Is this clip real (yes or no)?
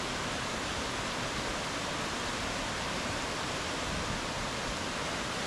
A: yes